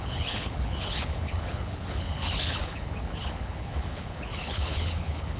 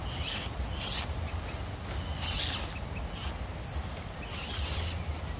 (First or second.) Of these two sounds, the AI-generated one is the first